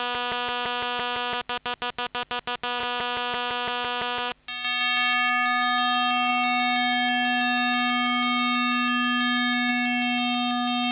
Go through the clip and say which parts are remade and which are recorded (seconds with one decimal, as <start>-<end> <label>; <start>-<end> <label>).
0.0-10.9 recorded